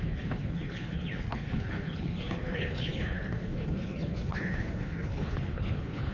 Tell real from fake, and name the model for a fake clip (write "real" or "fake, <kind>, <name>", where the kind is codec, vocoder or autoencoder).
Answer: fake, codec, HILCodec